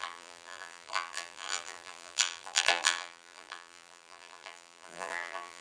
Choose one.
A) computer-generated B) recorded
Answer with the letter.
A